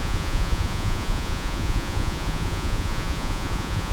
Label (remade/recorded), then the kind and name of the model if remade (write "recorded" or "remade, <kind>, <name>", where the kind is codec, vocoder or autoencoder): remade, vocoder, Vocos